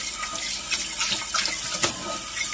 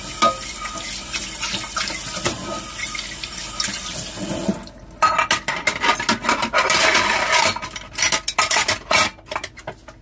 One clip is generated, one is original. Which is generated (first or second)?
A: first